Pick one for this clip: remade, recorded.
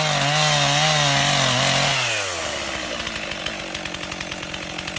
recorded